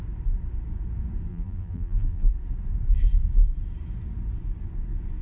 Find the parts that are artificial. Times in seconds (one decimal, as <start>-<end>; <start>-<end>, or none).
1.3-2.3